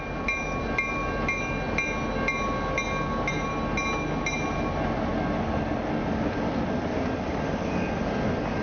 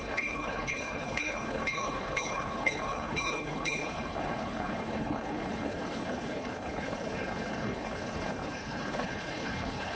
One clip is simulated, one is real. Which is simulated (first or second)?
second